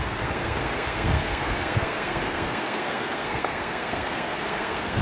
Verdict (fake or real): fake